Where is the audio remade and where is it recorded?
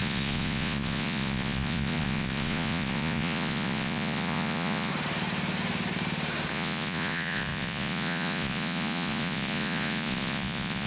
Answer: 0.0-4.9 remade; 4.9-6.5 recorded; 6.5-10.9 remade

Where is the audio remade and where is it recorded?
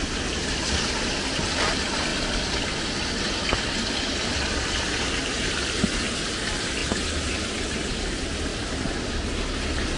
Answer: 0.0-10.0 recorded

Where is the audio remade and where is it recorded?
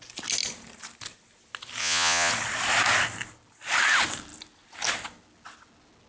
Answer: 0.0-1.8 recorded; 1.8-2.3 remade; 2.3-6.1 recorded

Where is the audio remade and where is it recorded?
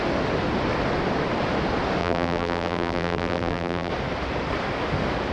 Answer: 0.0-2.0 recorded; 2.0-3.9 remade; 3.9-5.3 recorded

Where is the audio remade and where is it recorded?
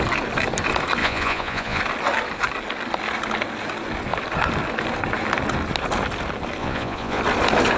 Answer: 0.0-1.0 recorded; 1.0-1.8 remade; 1.8-6.6 recorded; 6.6-7.2 remade; 7.2-7.8 recorded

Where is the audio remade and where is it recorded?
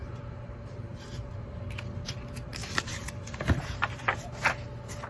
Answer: 0.0-1.8 remade; 1.8-2.5 recorded; 2.5-4.0 remade; 4.0-5.1 recorded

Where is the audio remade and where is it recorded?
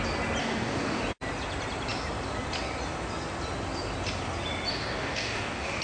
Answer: 0.0-0.4 recorded; 0.4-1.0 remade; 1.0-4.7 recorded; 4.7-5.8 remade